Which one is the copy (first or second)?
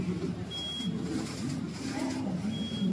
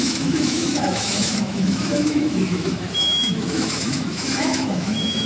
second